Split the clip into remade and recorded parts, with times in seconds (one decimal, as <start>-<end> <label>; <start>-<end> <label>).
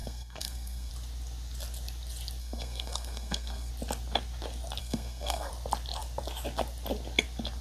0.0-0.9 remade; 0.9-2.4 recorded; 2.4-3.7 remade; 3.7-4.8 recorded; 4.8-5.5 remade; 5.5-7.6 recorded